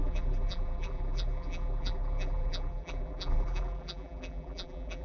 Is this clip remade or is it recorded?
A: remade